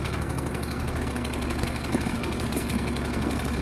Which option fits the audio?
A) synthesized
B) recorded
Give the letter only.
A